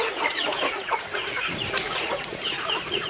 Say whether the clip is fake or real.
fake